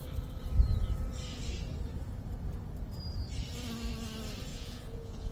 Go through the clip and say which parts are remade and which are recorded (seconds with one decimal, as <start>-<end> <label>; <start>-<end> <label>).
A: 0.0-4.5 recorded; 4.5-5.3 remade